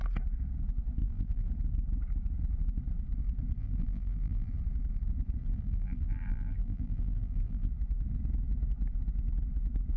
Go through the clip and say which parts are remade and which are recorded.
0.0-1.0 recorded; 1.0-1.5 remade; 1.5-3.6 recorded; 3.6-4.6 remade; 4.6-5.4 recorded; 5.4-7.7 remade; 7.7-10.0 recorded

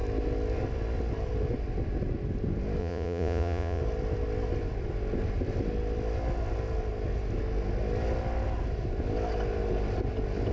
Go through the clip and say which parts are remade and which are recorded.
0.0-2.8 recorded; 2.8-3.8 remade; 3.8-10.5 recorded

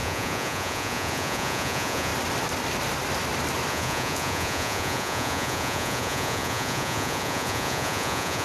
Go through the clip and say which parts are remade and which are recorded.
0.0-2.1 remade; 2.1-3.7 recorded; 3.7-8.4 remade

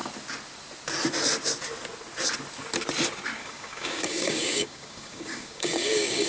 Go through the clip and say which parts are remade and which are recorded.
0.0-3.4 recorded; 3.4-6.3 remade

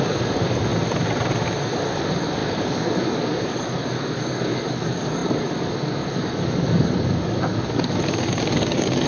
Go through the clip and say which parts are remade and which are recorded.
0.0-0.7 remade; 0.7-1.9 recorded; 1.9-9.1 remade